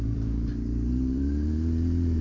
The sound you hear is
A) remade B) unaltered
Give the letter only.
A